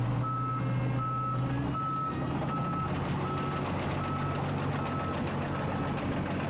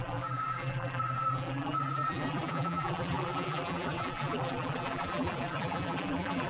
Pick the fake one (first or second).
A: second